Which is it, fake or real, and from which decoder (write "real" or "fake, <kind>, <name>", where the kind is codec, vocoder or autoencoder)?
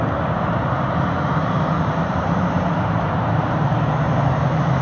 fake, vocoder, BigVGAN v2